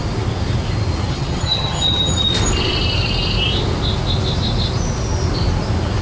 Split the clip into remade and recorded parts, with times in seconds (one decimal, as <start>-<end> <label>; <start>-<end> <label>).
0.0-1.1 recorded; 1.1-2.1 remade; 2.1-6.0 recorded